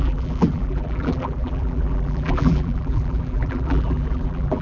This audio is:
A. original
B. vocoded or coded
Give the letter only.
B